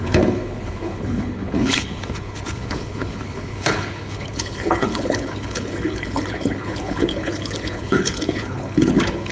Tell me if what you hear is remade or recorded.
remade